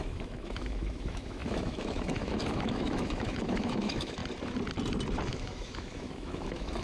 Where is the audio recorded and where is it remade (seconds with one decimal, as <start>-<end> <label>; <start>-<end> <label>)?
0.0-4.2 remade; 4.2-5.3 recorded; 5.3-6.8 remade